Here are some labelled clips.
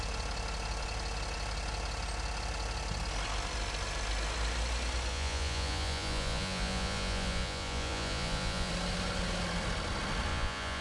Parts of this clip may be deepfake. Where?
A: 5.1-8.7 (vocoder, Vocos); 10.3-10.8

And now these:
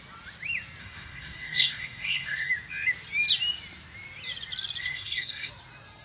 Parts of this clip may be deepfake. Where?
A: 0.8-2.5 (codec, SNAC); 4.8-5.5